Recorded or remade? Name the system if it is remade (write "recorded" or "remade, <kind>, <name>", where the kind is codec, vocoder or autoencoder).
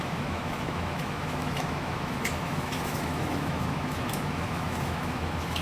remade, autoencoder, DAC-VAE